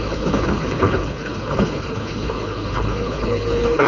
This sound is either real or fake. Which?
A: fake